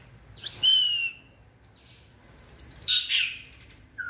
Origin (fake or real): real